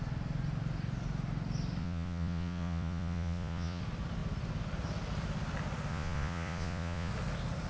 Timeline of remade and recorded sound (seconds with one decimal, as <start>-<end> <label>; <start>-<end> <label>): 0.0-1.8 recorded; 1.8-3.8 remade; 3.8-5.9 recorded; 5.9-7.1 remade; 7.1-7.7 recorded